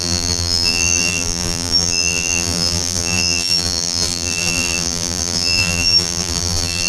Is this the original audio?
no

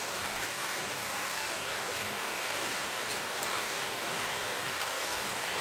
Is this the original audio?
no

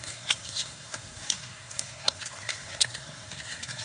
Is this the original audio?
no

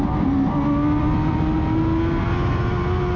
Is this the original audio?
yes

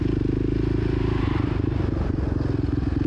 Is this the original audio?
yes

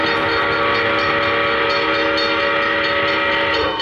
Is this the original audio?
yes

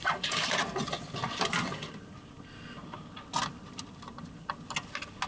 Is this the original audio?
yes